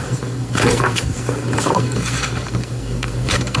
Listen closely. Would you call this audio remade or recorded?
remade